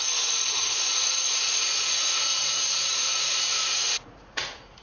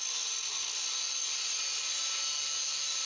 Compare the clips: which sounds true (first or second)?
second